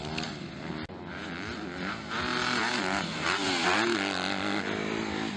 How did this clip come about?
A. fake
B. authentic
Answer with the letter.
B